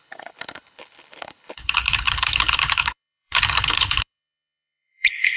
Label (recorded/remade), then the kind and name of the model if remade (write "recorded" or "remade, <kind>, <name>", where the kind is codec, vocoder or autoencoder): remade, codec, HILCodec